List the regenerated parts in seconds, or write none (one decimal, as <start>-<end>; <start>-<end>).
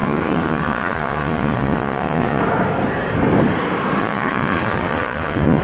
0.0-2.4; 4.0-5.6